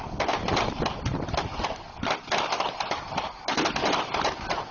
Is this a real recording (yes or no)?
yes